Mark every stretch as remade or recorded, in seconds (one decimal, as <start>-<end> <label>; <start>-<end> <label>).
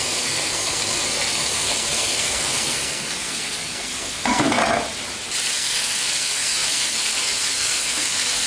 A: 0.0-4.6 remade; 4.6-5.5 recorded; 5.5-8.5 remade